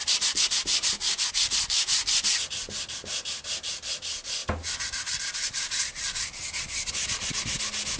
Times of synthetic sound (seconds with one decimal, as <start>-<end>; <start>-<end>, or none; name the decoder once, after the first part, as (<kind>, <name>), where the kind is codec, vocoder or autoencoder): none